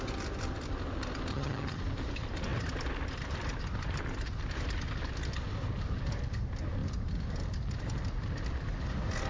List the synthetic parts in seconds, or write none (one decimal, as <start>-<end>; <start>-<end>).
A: 1.3-1.8